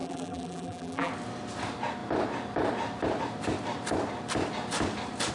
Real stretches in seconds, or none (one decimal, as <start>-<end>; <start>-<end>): 1.1-5.3